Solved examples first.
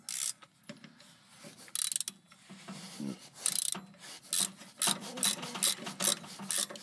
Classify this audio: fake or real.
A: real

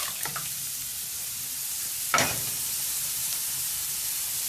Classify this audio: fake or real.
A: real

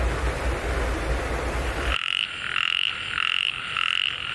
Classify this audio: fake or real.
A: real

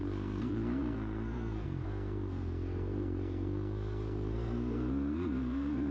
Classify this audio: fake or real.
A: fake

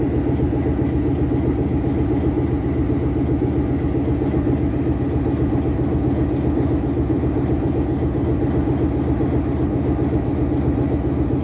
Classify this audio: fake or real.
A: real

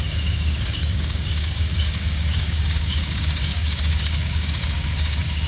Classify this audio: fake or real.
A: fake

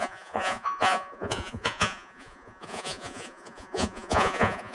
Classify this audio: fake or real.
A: fake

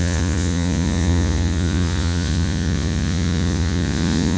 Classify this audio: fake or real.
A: fake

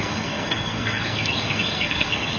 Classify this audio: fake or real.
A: fake